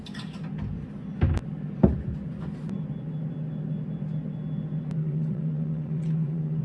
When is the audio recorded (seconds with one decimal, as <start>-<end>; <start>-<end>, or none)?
0.0-5.0